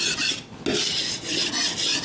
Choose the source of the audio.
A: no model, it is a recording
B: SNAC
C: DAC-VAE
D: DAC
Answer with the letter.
A